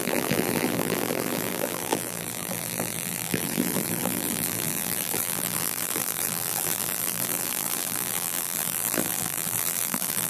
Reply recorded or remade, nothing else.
remade